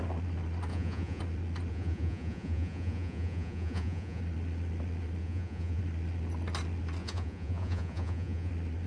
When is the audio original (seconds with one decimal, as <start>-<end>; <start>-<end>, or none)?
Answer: 0.0-0.7; 1.2-1.7; 4.2-5.2; 5.8-7.0; 8.5-8.9